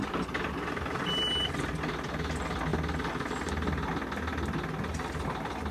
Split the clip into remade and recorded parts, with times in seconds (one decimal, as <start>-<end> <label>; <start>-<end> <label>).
0.0-5.7 recorded